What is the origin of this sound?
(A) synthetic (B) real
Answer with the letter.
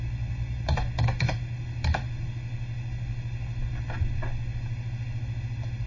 B